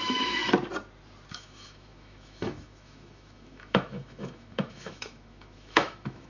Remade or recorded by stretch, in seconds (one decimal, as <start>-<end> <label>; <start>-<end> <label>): 0.0-0.4 remade; 0.4-1.3 recorded; 1.3-6.3 remade